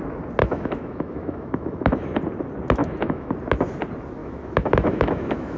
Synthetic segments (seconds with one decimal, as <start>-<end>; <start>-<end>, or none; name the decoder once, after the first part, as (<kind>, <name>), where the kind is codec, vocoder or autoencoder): 0.4-2.2 (autoencoder, DAC-VAE); 2.8-3.3; 4.2-5.6